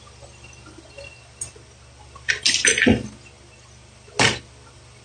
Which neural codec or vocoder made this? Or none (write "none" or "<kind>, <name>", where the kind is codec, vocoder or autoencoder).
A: none